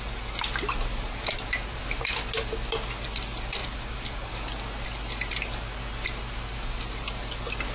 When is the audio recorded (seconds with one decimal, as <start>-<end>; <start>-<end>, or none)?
0.0-0.9; 2.0-3.6; 4.3-7.7